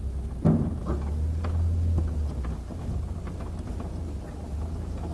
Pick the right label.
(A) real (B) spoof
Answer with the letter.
A